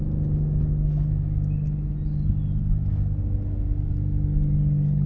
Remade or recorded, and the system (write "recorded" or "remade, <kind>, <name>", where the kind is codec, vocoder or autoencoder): recorded